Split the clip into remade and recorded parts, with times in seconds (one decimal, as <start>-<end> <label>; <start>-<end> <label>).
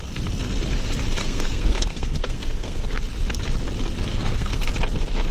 0.0-1.2 recorded; 1.2-2.9 remade; 2.9-4.1 recorded; 4.1-4.7 remade; 4.7-5.3 recorded